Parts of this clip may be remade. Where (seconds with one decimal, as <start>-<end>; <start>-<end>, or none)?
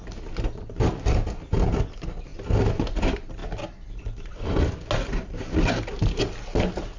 none